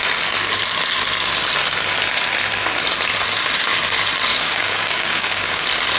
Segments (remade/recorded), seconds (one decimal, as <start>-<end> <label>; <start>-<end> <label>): 0.0-4.3 recorded; 4.3-5.6 remade; 5.6-6.0 recorded